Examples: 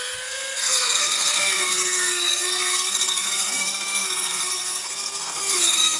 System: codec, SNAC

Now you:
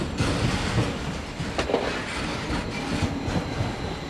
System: none